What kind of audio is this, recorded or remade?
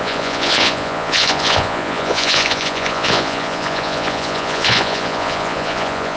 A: remade